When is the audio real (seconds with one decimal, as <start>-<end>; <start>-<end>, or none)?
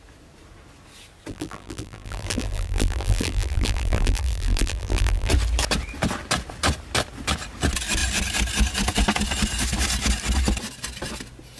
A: 0.0-1.3; 5.3-11.6